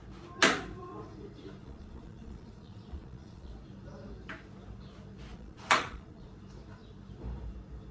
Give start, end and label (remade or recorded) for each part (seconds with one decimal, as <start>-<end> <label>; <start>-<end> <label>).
0.0-1.6 recorded; 1.6-3.5 remade; 3.5-5.3 recorded; 5.3-6.3 remade; 6.3-7.9 recorded